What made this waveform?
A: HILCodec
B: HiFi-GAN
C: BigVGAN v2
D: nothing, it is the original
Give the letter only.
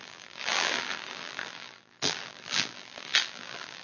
C